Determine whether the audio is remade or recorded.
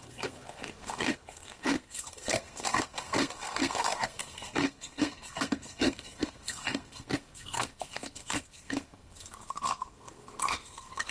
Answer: remade